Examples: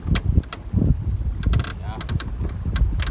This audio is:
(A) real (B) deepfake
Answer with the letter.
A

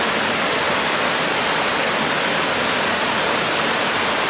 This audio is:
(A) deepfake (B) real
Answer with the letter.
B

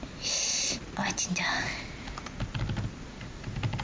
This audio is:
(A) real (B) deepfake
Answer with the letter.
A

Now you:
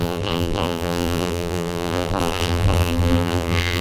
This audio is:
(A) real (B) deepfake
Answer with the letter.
B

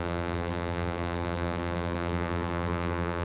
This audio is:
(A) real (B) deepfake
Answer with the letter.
B